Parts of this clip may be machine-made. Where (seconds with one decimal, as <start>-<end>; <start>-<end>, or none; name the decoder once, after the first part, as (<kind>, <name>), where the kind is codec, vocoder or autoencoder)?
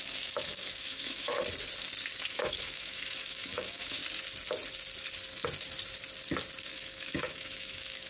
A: 0.0-1.4 (autoencoder, DAC-VAE); 2.3-4.0; 6.7-8.1